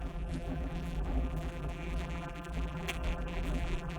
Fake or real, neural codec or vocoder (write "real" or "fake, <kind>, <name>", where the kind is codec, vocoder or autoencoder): fake, vocoder, BigVGAN v2